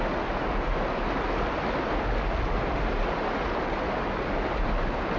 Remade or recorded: recorded